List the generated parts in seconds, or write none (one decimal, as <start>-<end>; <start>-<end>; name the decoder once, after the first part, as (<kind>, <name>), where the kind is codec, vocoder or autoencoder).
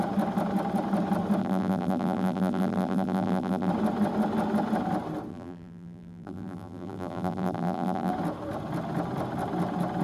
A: 1.4-3.7 (vocoder, BigVGAN v2); 5.3-8.1